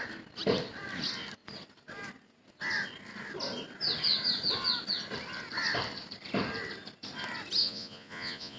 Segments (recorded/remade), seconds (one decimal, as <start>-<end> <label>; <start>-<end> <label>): 0.0-7.6 recorded; 7.6-8.6 remade